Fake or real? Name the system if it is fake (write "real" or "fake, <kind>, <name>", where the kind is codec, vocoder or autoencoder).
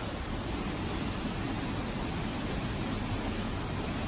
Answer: real